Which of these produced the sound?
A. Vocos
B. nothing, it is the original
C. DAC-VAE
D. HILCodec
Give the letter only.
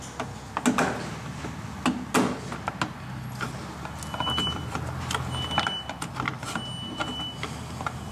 B